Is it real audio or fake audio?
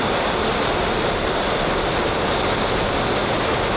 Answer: real